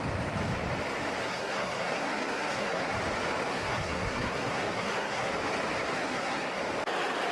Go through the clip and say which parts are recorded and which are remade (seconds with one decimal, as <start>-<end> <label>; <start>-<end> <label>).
0.0-1.2 recorded; 1.2-3.0 remade; 3.0-3.5 recorded; 3.5-5.3 remade; 5.3-5.9 recorded; 5.9-6.6 remade; 6.6-7.3 recorded